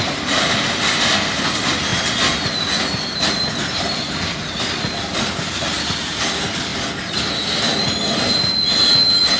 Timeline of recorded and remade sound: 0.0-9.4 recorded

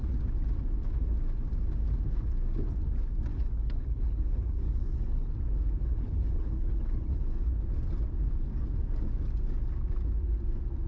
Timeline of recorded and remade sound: 0.0-3.3 recorded; 3.3-5.3 remade; 5.3-5.8 recorded; 5.8-7.5 remade; 7.5-10.9 recorded

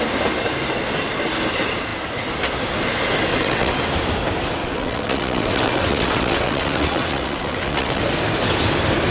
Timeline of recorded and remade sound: 0.0-3.3 recorded; 3.3-3.8 remade; 3.8-4.6 recorded; 4.6-8.0 remade; 8.0-9.1 recorded

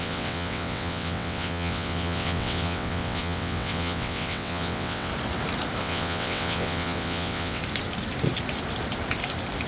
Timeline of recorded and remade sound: 0.0-5.1 remade; 5.1-5.8 recorded; 5.8-7.6 remade; 7.6-9.7 recorded

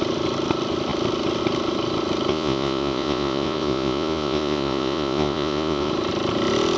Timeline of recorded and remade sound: 0.0-2.3 recorded; 2.3-5.9 remade; 5.9-6.8 recorded

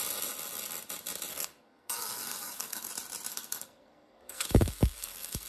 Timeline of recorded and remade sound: 0.0-1.3 recorded; 1.3-2.9 remade; 2.9-3.3 recorded; 3.3-5.5 remade

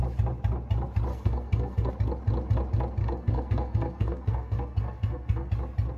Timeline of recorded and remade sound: 0.0-1.1 recorded; 1.1-1.9 remade; 1.9-3.0 recorded; 3.0-5.5 remade; 5.5-6.0 recorded